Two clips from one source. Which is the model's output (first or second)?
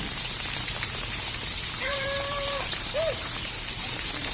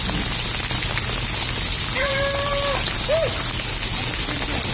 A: first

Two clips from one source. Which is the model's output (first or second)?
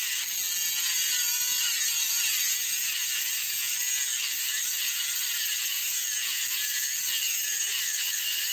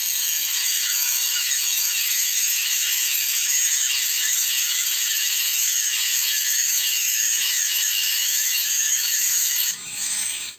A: second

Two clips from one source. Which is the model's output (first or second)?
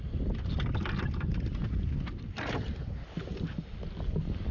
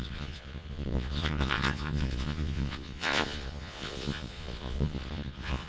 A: second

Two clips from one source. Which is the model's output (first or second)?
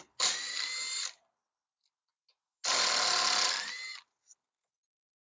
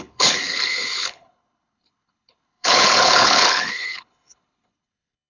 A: second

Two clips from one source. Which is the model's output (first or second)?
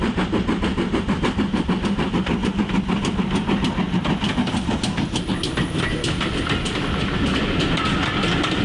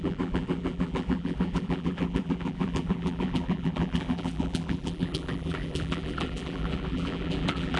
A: second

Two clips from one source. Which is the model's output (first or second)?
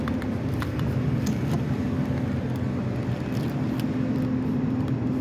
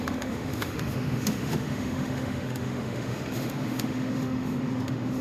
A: second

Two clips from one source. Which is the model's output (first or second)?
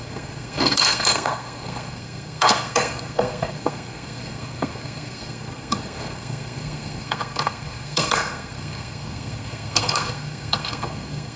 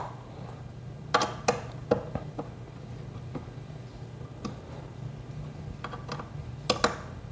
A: first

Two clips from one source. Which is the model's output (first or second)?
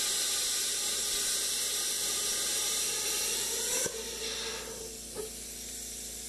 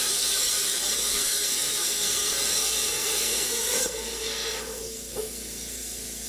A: second